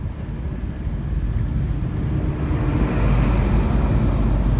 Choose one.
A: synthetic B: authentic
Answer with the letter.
B